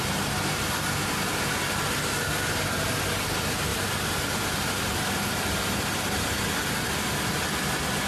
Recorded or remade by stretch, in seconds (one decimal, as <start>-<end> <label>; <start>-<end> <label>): 0.0-8.1 recorded